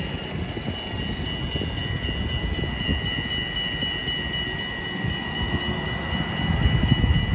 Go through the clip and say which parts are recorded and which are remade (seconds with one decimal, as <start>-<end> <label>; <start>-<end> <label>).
0.0-7.3 recorded